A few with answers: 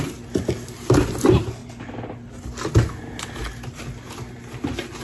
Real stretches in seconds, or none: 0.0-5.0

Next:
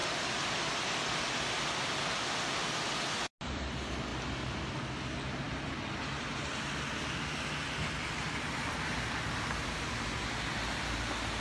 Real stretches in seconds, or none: 0.0-11.4

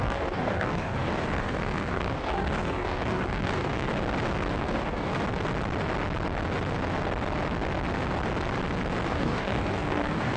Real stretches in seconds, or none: 3.9-4.6; 5.1-9.1